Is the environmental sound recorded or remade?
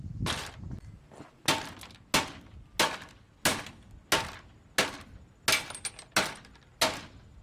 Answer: recorded